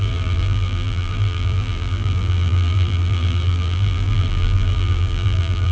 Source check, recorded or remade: remade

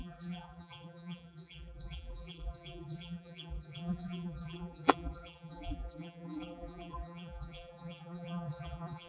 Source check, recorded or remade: remade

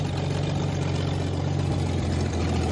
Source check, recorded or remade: recorded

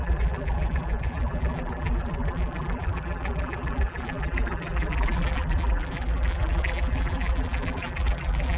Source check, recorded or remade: remade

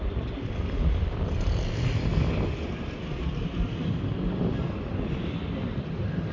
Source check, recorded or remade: recorded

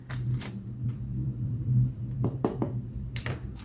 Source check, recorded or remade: remade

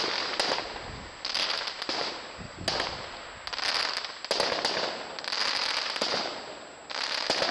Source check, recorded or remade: recorded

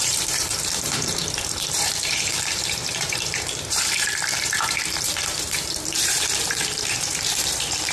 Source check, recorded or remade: remade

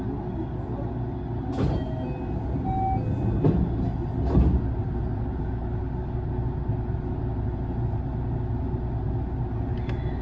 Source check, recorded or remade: recorded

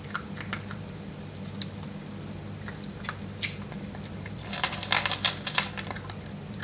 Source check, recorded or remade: remade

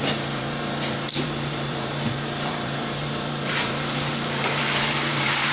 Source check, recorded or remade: remade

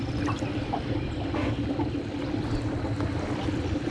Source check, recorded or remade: remade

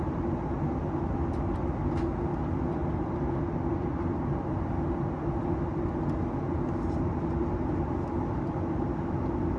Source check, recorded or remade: recorded